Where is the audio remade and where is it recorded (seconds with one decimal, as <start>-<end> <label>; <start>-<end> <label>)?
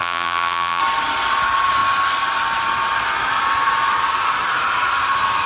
0.0-0.8 remade; 0.8-5.5 recorded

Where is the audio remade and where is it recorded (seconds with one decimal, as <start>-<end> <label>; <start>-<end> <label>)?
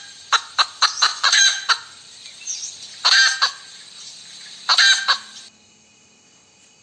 0.0-1.1 recorded; 1.1-1.7 remade; 1.7-6.8 recorded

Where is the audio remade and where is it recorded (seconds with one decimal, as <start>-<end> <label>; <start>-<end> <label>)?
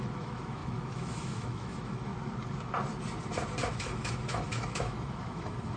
0.0-2.1 remade; 2.1-3.7 recorded; 3.7-5.8 remade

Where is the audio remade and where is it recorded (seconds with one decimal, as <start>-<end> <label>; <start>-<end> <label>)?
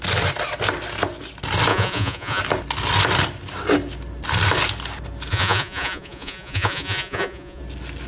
0.0-1.7 recorded; 1.7-2.4 remade; 2.4-5.3 recorded; 5.3-7.6 remade; 7.6-8.1 recorded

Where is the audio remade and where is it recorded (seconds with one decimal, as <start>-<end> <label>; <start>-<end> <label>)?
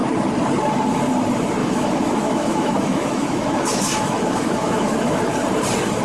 0.0-1.6 recorded; 1.6-5.2 remade; 5.2-6.0 recorded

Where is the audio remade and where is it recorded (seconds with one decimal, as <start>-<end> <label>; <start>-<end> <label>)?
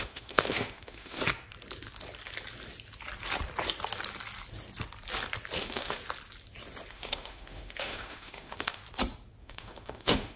0.0-1.2 remade; 1.2-5.6 recorded; 5.6-6.0 remade; 6.0-6.9 recorded; 6.9-8.8 remade; 8.8-9.4 recorded; 9.4-10.4 remade